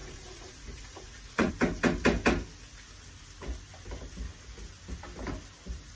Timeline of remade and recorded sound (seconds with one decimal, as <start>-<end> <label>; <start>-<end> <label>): 0.0-1.5 remade; 1.5-6.0 recorded